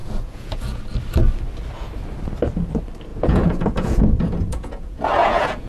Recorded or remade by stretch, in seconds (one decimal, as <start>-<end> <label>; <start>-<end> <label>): 0.0-0.8 remade; 0.8-3.1 recorded; 3.1-5.7 remade